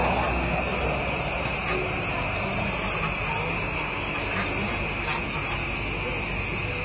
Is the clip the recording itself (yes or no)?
yes